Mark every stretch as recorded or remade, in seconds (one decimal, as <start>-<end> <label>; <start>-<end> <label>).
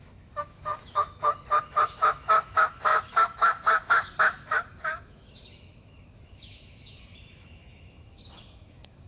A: 0.0-9.1 remade